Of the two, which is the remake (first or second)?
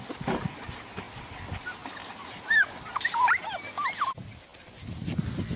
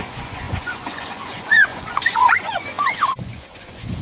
second